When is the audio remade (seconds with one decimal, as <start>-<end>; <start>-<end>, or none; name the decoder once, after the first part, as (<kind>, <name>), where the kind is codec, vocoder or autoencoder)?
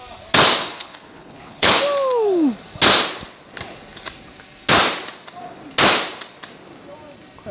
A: 0.6-1.8 (codec, HILCodec)